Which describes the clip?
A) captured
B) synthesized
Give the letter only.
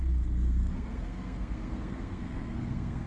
B